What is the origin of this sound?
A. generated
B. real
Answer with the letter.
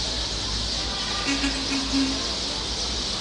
B